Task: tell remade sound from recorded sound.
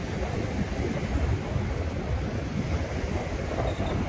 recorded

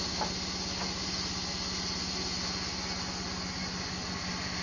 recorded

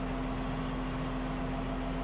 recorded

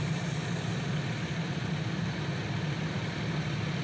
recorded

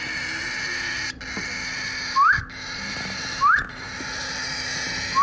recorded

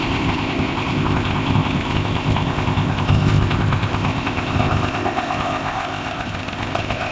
remade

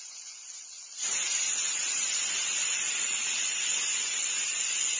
recorded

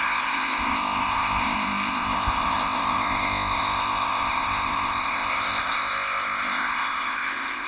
remade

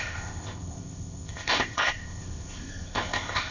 remade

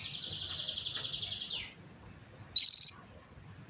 recorded